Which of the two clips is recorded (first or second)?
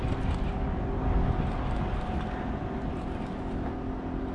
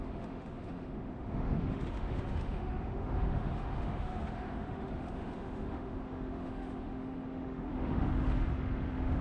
first